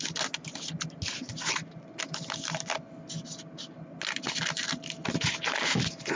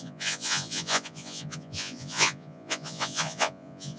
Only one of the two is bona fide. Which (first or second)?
first